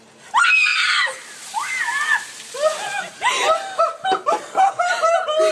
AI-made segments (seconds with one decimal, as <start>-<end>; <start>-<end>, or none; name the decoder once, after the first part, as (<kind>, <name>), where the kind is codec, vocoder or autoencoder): none